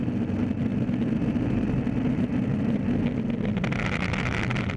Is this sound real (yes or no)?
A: yes